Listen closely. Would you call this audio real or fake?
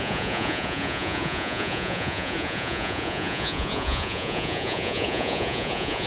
fake